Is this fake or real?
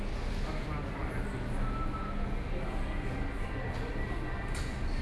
real